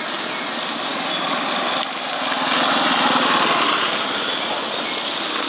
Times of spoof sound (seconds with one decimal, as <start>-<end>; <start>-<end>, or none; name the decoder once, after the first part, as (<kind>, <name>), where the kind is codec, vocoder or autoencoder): none